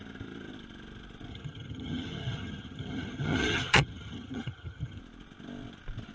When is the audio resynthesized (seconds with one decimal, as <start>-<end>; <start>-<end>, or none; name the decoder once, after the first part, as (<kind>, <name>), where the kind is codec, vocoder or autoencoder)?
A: 1.3-5.0 (vocoder, HiFi-GAN)